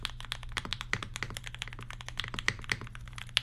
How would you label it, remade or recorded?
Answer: recorded